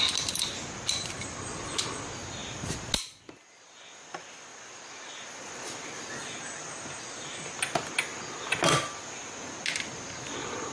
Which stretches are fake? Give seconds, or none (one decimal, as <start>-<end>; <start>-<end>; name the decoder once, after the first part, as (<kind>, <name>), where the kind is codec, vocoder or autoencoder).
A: none